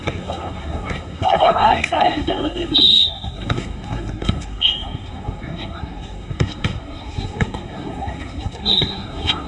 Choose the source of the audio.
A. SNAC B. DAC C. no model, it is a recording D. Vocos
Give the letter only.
A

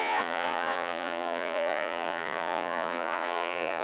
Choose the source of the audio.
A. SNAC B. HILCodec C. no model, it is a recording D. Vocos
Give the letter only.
D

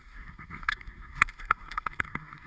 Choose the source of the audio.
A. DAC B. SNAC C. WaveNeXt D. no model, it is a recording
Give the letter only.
B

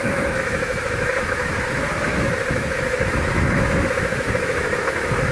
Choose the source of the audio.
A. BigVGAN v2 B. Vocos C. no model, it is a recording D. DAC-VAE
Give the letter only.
D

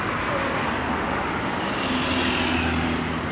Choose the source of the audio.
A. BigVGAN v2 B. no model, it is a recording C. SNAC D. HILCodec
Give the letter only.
B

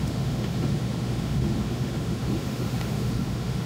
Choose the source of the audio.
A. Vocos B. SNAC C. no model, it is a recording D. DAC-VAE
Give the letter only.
D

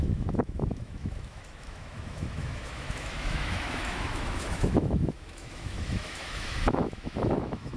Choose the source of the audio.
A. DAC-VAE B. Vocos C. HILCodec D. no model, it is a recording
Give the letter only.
A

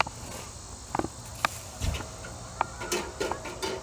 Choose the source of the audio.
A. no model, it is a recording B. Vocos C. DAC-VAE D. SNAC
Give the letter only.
A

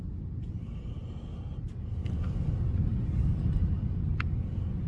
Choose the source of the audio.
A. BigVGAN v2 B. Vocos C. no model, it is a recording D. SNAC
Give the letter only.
C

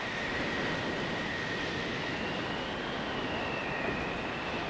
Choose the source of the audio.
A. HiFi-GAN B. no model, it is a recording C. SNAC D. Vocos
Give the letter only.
B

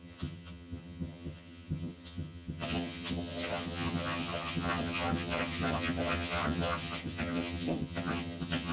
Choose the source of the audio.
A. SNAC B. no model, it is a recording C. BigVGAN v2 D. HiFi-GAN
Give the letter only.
D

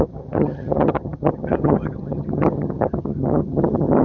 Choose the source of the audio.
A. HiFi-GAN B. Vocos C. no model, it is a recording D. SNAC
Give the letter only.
A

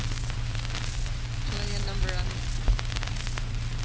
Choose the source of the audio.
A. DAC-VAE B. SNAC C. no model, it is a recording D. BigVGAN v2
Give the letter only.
C